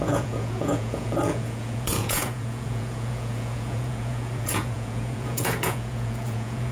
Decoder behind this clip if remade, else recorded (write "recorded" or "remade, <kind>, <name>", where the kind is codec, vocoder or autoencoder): remade, vocoder, Vocos